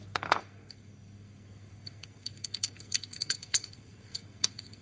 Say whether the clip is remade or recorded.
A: remade